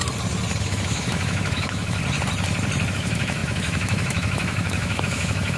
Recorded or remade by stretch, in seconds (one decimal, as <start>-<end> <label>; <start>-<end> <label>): 0.0-0.6 recorded; 0.6-2.0 remade; 2.0-2.9 recorded; 2.9-5.6 remade